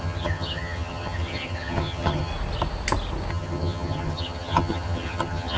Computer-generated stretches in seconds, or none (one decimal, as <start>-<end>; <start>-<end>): 0.0-2.3; 3.3-5.6